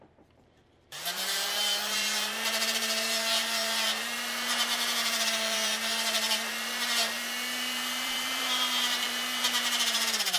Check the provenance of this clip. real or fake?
fake